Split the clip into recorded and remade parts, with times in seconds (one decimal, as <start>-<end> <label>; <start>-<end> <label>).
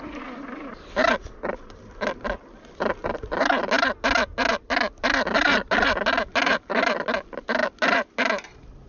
0.0-8.9 recorded